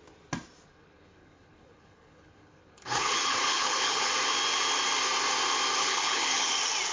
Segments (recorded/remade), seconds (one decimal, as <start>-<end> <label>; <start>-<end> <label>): 0.0-0.7 recorded; 0.7-4.1 remade; 4.1-5.8 recorded; 5.8-6.5 remade; 6.5-6.9 recorded